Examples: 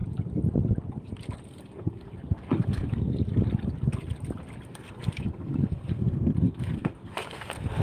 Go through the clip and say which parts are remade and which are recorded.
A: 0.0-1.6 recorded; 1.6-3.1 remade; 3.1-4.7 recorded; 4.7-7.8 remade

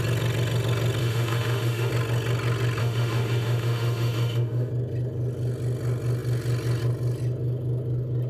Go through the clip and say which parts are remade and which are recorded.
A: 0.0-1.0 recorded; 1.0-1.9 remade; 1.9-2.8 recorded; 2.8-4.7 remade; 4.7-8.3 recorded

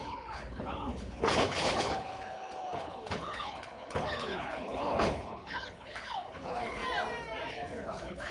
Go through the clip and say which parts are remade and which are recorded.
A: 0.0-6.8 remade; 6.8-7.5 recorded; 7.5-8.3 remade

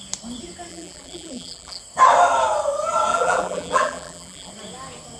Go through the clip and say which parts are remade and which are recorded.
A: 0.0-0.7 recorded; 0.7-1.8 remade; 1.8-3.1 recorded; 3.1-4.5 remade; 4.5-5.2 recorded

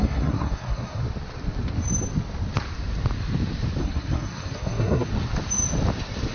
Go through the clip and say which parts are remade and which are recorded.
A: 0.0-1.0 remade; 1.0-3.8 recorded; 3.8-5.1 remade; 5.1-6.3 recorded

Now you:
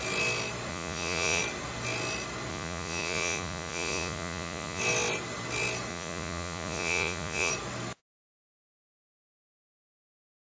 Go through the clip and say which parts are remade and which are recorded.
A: 0.0-0.7 recorded; 0.7-1.4 remade; 1.4-2.5 recorded; 2.5-4.8 remade; 4.8-5.9 recorded; 5.9-7.5 remade; 7.5-10.5 recorded